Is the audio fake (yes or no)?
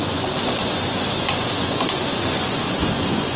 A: yes